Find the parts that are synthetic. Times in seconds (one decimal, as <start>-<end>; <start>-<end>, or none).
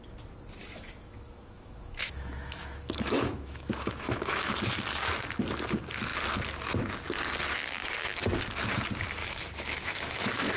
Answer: 0.6-4.5; 9.2-10.6